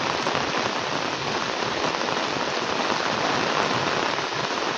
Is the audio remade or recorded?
recorded